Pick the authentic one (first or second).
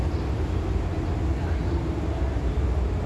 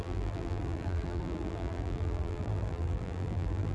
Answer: first